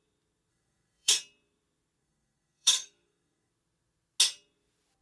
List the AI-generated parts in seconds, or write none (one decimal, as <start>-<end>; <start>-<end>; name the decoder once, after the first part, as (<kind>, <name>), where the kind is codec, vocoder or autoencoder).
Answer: 0.5-1.2 (codec, SNAC); 2.0-3.5